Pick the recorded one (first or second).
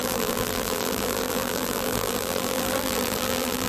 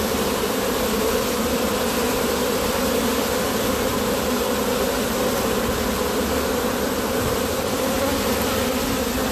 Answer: second